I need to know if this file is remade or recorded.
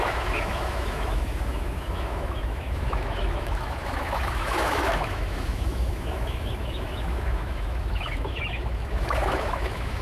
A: remade